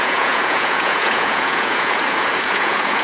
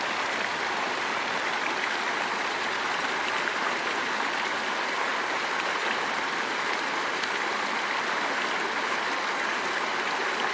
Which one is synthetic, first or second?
first